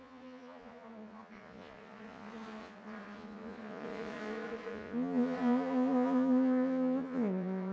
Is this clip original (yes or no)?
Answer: no